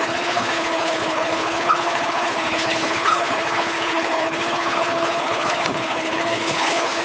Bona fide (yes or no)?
no